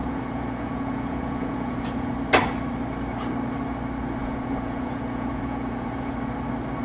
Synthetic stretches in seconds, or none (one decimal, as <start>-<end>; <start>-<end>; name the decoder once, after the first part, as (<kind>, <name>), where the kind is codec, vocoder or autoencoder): 0.0-2.1 (vocoder, Vocos); 4.2-6.1